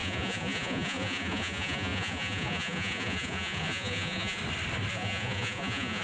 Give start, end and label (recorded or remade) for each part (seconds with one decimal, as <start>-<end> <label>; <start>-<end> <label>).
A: 0.0-4.4 remade; 4.4-4.9 recorded; 4.9-6.0 remade